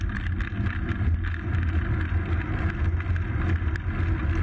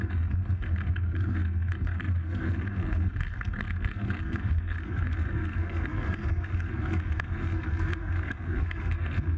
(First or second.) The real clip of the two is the first